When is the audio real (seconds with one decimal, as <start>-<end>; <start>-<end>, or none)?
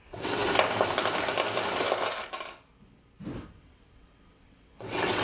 0.4-3.5